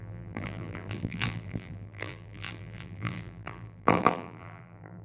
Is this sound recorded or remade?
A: remade